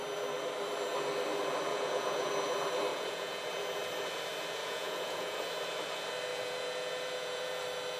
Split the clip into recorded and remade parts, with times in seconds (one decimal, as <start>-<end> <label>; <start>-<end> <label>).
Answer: 0.0-1.7 recorded; 1.7-2.3 remade; 2.3-2.9 recorded; 2.9-3.5 remade; 3.5-4.6 recorded; 4.6-5.4 remade; 5.4-6.3 recorded; 6.3-7.6 remade; 7.6-8.0 recorded